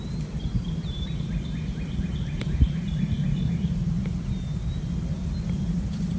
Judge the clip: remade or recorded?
recorded